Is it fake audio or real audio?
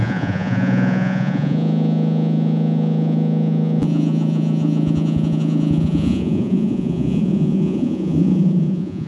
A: fake